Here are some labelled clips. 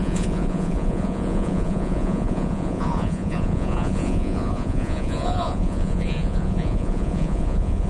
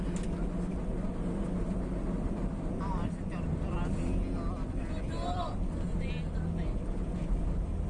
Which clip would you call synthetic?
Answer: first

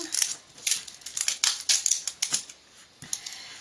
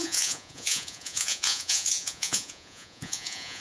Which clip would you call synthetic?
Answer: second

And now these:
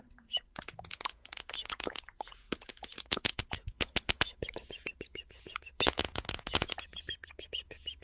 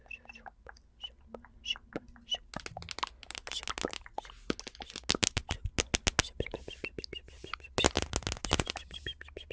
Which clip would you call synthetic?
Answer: first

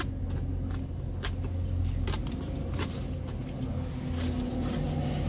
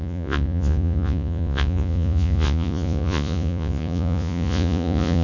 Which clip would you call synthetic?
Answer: second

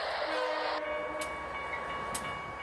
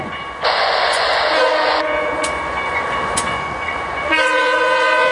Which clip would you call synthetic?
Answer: second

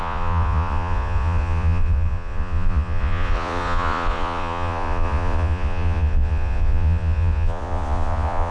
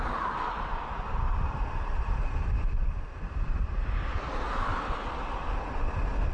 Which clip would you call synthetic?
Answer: first